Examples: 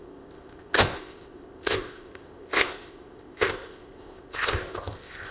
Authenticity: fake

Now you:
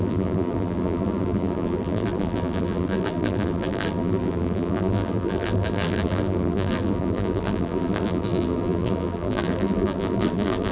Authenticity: fake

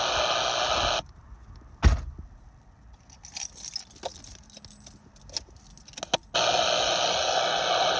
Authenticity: real